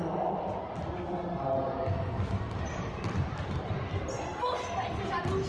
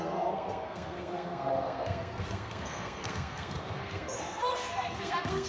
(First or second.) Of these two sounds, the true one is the first